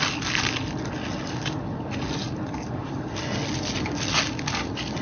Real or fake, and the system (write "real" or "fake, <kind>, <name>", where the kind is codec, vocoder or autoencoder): real